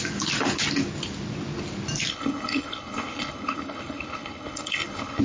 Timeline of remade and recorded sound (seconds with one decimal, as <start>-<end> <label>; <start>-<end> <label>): 0.0-2.1 recorded; 2.1-5.2 remade